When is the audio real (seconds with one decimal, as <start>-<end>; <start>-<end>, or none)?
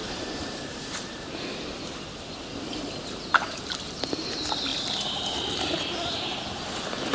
1.5-4.7; 5.8-7.1